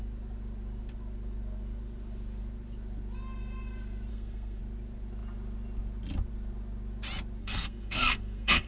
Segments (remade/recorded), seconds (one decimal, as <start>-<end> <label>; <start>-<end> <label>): 0.0-4.1 recorded; 4.1-4.6 remade; 4.6-7.4 recorded; 7.4-8.7 remade